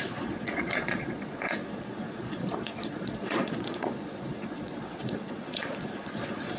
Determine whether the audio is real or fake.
fake